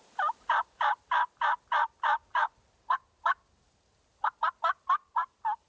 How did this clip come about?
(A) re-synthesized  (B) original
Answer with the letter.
B